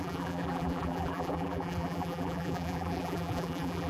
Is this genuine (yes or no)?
no